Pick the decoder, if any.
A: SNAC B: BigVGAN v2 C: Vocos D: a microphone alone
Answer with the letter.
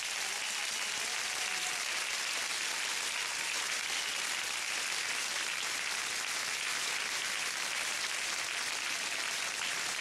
D